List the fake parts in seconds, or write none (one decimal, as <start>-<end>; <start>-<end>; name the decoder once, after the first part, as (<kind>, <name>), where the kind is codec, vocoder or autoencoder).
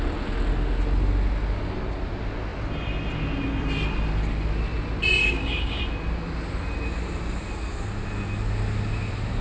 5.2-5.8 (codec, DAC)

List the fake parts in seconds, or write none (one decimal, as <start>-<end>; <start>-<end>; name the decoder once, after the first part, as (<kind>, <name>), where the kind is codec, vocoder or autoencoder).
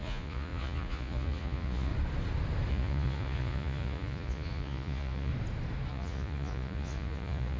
0.0-1.9 (vocoder, Vocos); 2.7-5.3; 5.9-7.6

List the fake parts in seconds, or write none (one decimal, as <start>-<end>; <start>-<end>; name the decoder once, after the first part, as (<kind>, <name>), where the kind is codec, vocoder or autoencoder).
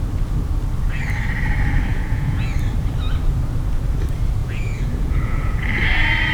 1.9-2.5 (vocoder, Vocos); 4.4-5.6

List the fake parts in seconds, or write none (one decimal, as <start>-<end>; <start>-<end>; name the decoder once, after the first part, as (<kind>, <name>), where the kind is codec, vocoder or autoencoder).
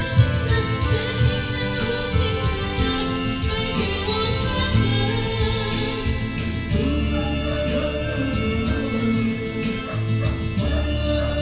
none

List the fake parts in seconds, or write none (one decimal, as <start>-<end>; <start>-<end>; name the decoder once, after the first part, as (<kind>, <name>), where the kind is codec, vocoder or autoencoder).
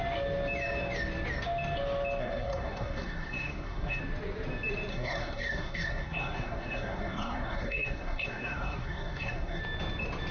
2.2-4.0 (codec, SNAC); 4.9-9.6